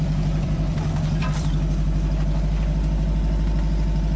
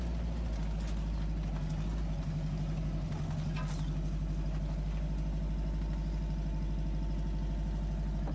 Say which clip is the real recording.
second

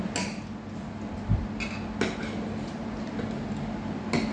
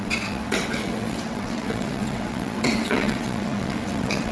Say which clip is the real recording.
first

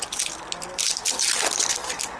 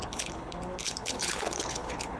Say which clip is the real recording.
first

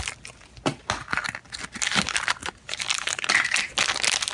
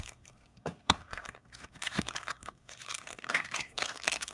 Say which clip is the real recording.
first